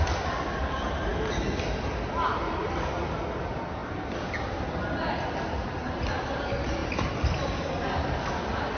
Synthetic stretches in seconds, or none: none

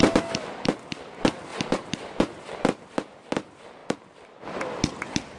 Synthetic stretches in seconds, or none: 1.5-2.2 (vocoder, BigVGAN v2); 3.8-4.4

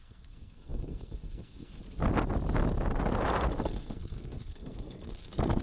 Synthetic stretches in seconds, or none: 0.0-1.8 (codec, SNAC); 3.6-5.6